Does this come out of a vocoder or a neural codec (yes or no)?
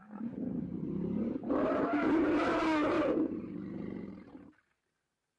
yes